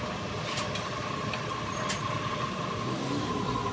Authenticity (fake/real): fake